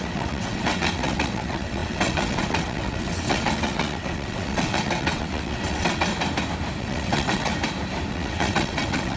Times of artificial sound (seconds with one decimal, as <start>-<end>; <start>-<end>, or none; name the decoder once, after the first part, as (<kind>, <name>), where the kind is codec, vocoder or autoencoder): 0.0-6.1 (vocoder, WaveNeXt); 6.8-7.5; 8.1-9.2